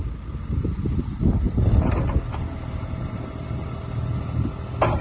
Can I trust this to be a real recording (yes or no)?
yes